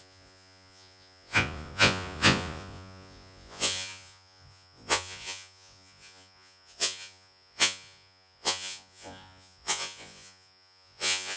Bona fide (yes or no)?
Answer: no